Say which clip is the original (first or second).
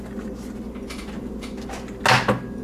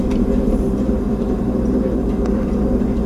first